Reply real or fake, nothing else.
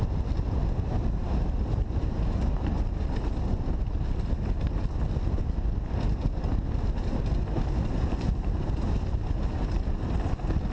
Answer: real